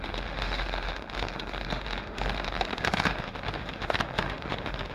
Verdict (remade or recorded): remade